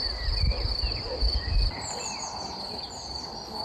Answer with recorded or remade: recorded